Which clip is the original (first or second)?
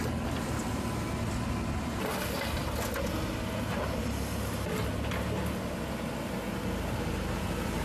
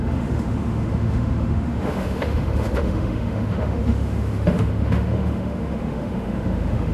first